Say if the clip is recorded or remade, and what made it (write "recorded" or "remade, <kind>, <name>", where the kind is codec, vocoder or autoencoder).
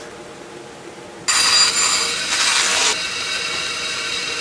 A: recorded